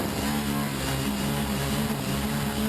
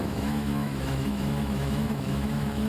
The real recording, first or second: first